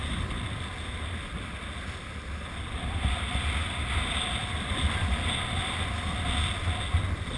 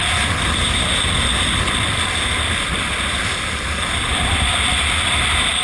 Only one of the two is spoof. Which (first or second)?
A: second